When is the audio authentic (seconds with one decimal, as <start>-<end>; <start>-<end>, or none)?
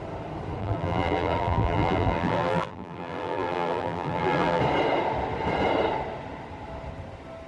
0.0-0.6; 4.6-7.5